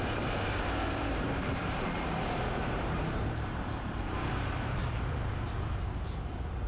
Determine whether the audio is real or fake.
fake